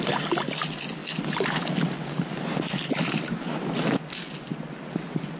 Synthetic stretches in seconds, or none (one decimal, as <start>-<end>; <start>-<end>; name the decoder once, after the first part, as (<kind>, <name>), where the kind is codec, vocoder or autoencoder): none